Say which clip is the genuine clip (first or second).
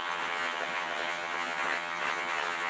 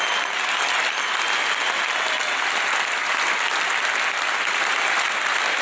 second